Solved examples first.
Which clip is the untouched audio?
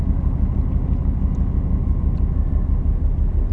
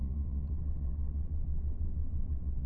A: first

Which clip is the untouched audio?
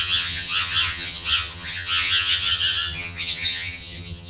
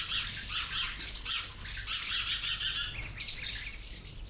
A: second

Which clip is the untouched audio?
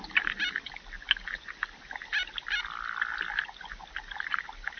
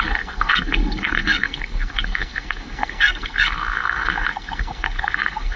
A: first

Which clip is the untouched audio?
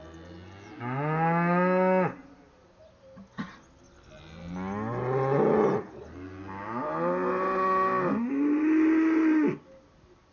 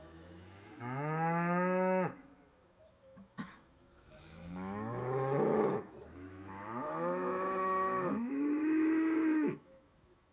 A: first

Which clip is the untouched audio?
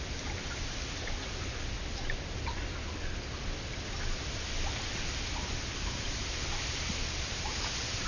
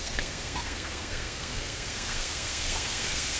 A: first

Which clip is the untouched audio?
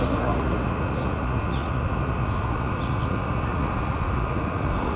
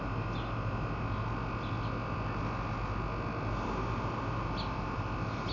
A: second